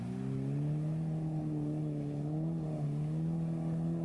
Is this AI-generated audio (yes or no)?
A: no